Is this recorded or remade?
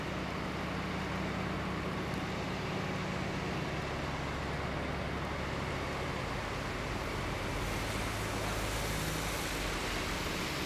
recorded